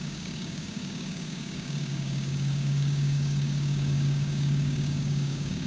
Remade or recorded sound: remade